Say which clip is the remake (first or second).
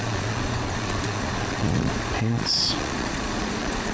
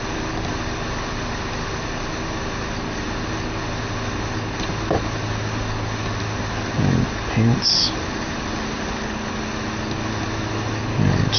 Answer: first